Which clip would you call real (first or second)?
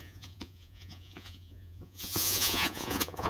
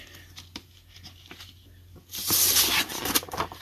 second